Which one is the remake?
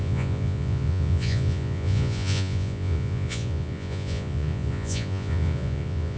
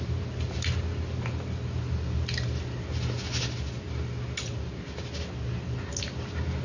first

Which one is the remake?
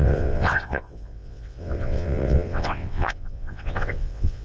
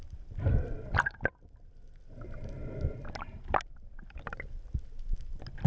first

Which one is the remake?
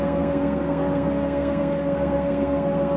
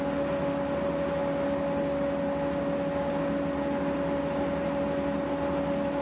first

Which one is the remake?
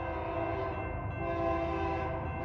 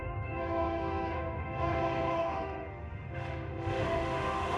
second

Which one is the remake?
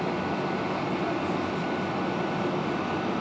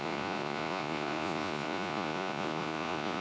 second